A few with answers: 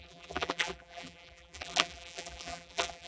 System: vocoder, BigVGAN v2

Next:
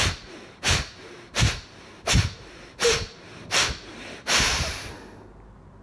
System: vocoder, BigVGAN v2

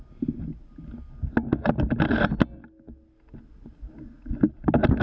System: none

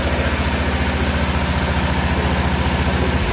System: none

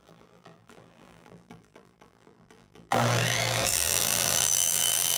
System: vocoder, BigVGAN v2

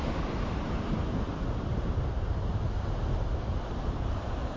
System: vocoder, BigVGAN v2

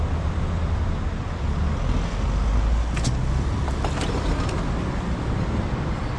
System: none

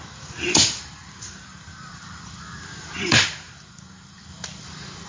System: vocoder, BigVGAN v2